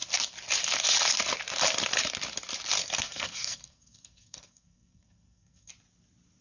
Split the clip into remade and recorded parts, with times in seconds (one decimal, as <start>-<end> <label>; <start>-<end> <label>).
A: 0.0-2.8 recorded; 2.8-5.7 remade; 5.7-6.4 recorded